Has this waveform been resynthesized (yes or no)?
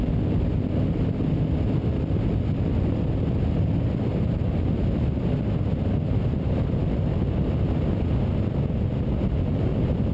no